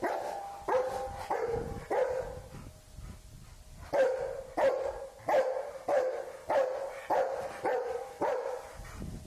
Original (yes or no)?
yes